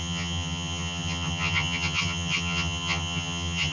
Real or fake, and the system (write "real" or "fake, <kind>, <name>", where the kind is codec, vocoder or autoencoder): fake, vocoder, HiFi-GAN